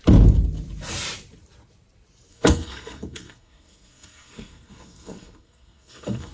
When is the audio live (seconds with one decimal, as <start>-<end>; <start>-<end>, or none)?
0.0-2.3